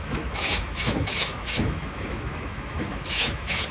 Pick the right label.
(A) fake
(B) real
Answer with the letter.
A